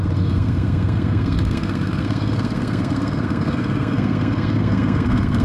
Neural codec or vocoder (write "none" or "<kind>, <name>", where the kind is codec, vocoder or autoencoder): codec, SNAC